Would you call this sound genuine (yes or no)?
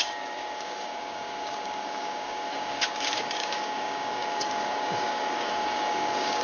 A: no